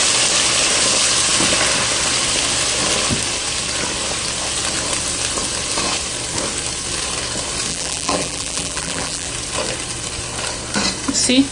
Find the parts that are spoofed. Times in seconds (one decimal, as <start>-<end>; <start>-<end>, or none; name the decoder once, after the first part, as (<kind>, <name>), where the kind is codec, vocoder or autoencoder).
7.7-9.3 (vocoder, BigVGAN v2)